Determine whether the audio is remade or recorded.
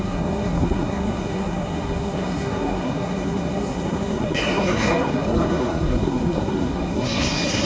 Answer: remade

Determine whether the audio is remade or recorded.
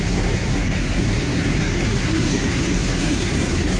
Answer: remade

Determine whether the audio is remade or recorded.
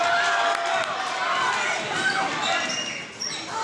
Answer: recorded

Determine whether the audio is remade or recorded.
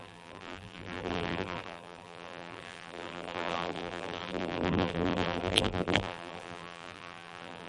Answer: remade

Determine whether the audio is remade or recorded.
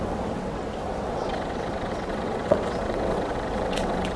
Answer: remade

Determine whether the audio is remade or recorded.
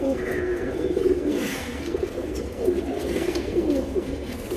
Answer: remade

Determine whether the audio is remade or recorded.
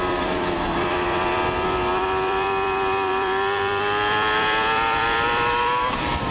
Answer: remade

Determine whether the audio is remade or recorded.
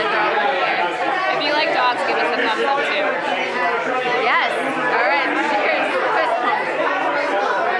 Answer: recorded